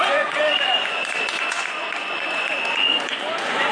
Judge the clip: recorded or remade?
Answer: remade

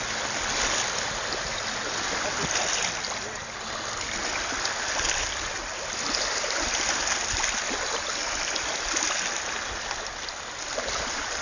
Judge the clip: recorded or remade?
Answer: recorded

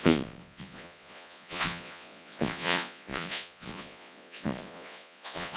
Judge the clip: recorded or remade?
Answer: remade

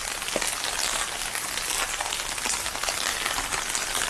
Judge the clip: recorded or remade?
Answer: recorded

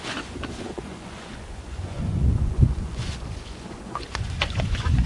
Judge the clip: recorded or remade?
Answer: remade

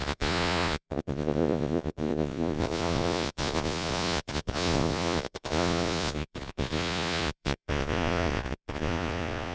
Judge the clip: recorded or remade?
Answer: remade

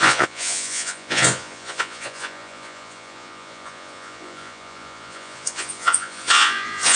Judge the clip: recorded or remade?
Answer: remade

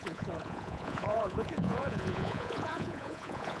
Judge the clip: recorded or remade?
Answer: remade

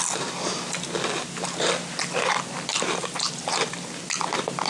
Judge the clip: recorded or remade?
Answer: recorded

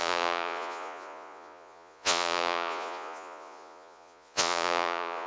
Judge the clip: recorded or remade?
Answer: remade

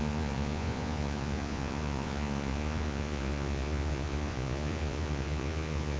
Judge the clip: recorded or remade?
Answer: remade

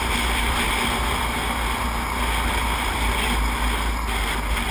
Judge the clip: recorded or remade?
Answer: recorded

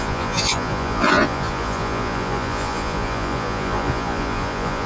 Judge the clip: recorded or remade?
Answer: remade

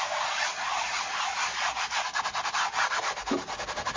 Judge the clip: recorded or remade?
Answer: recorded